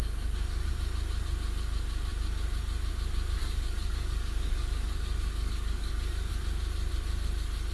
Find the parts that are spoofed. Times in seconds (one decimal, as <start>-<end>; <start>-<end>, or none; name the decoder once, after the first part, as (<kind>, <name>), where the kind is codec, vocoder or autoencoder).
0.0-0.7 (codec, DAC); 3.4-6.3